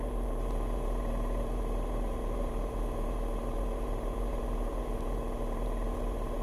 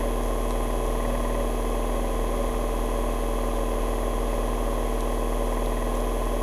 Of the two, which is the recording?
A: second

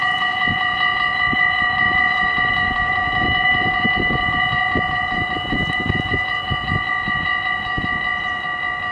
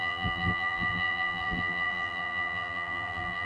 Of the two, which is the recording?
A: first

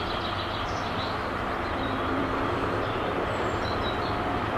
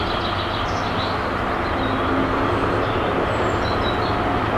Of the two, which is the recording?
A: second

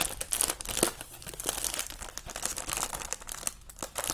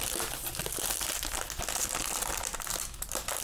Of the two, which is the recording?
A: second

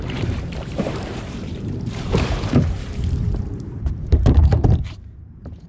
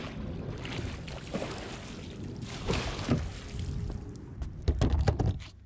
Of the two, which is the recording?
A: second